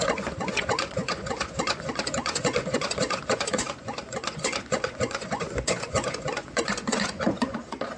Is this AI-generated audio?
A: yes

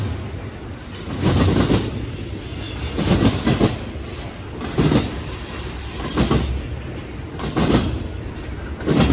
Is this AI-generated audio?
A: no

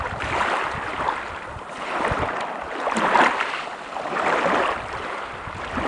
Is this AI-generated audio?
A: no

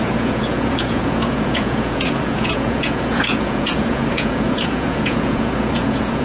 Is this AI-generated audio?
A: yes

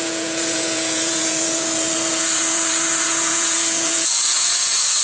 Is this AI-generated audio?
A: yes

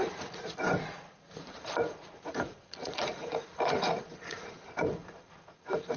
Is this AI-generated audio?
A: yes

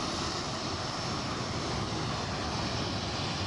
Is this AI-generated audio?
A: no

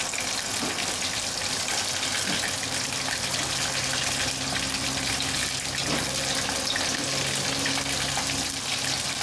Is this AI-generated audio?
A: no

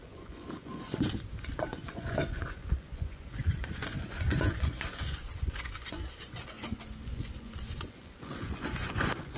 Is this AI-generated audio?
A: yes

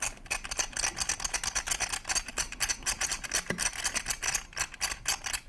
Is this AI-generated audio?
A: no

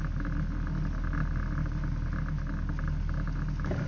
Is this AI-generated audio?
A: no